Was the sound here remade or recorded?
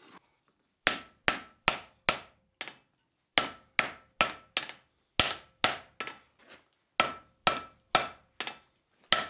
recorded